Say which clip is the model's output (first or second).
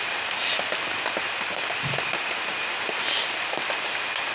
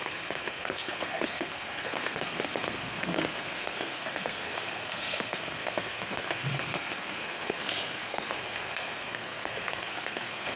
second